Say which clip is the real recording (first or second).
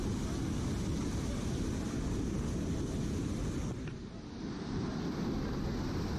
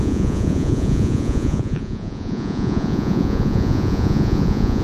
first